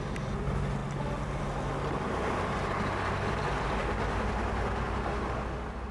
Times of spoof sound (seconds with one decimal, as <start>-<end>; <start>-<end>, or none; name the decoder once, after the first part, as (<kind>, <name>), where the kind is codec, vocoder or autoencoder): none